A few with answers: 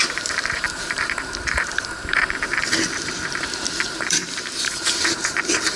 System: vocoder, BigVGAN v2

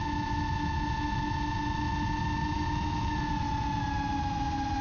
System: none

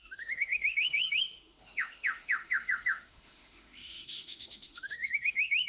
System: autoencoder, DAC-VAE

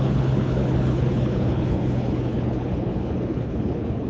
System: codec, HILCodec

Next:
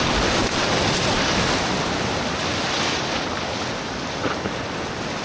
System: vocoder, BigVGAN v2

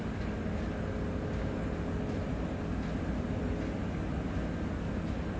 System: none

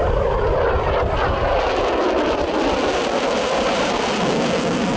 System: none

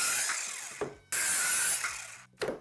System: none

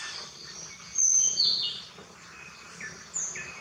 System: none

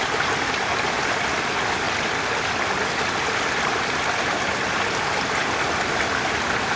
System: none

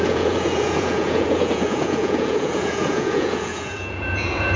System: vocoder, Vocos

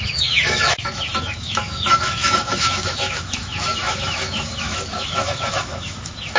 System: autoencoder, DAC-VAE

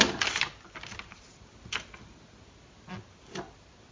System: none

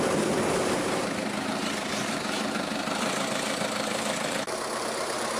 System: vocoder, BigVGAN v2